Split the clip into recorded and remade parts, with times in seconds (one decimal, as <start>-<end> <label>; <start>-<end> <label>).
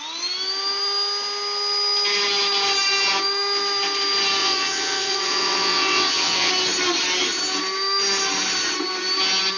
0.0-4.4 recorded; 4.4-6.5 remade; 6.5-9.6 recorded